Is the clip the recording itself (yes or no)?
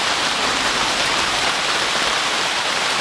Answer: no